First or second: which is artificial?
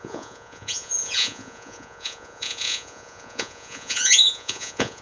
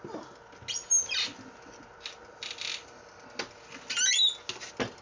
first